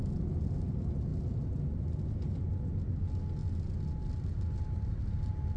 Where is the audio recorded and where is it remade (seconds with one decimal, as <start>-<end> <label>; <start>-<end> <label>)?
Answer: 0.0-5.6 recorded